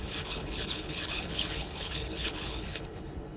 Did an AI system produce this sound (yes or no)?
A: yes